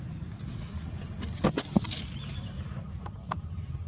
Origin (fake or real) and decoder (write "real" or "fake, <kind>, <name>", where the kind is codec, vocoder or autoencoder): real